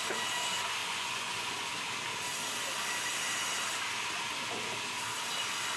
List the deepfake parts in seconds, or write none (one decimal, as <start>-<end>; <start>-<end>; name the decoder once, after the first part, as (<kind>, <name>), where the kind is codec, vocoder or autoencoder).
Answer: 0.8-1.7 (vocoder, Vocos)